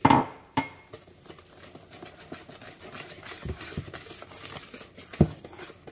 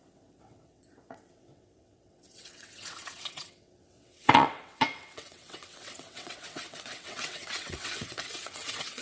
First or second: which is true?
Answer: first